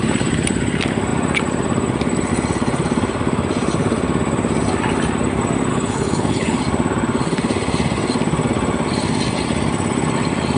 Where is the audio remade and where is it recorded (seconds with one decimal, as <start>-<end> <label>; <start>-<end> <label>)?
0.0-5.7 recorded; 5.7-6.6 remade; 6.6-10.6 recorded